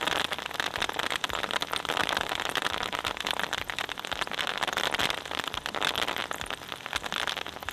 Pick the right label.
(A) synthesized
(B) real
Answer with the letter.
A